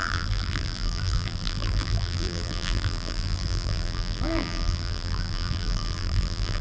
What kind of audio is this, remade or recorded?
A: remade